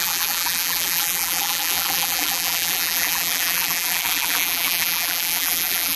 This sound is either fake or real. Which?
fake